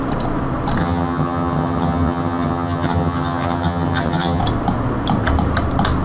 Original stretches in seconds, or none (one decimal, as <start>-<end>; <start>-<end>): 0.0-0.8; 4.4-6.0